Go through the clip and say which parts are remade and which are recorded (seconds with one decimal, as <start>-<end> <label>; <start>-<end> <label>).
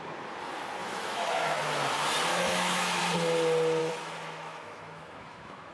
0.0-0.8 recorded; 0.8-1.6 remade; 1.6-2.3 recorded; 2.3-3.0 remade; 3.0-3.8 recorded; 3.8-5.7 remade